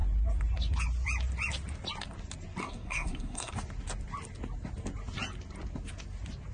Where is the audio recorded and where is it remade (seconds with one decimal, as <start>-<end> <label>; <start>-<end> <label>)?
0.0-2.6 recorded; 2.6-3.5 remade; 3.5-6.5 recorded

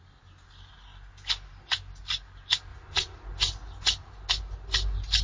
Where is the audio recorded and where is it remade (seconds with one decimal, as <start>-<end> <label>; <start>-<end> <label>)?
0.0-5.2 recorded